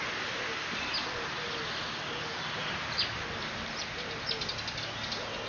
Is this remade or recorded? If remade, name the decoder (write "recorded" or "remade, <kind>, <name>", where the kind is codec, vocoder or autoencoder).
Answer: recorded